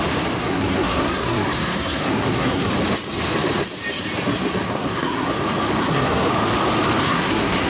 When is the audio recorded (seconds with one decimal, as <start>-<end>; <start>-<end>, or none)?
0.0-0.4; 2.7-4.7; 5.3-5.8; 6.3-7.0